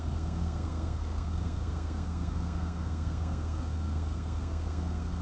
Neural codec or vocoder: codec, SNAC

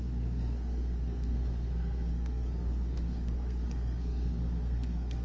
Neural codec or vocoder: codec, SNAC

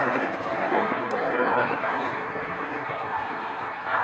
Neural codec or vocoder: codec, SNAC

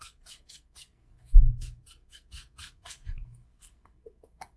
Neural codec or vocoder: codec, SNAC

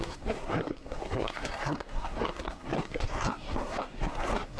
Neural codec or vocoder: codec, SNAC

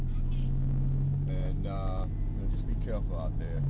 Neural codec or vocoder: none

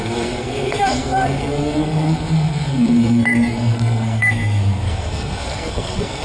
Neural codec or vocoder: codec, SNAC